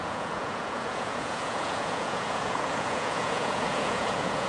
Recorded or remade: remade